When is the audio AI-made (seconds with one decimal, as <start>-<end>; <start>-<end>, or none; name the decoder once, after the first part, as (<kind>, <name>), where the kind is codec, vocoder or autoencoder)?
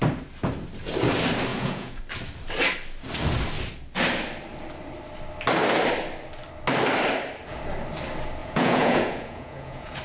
1.5-2.0 (vocoder, Vocos); 8.4-10.0